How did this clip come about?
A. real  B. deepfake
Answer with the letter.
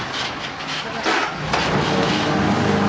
A